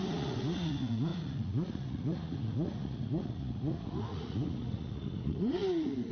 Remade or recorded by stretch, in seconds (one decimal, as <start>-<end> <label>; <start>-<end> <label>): 0.0-6.1 remade